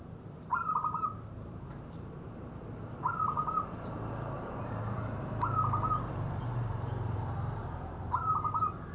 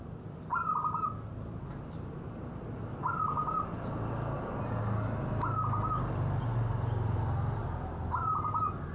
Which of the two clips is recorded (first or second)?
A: second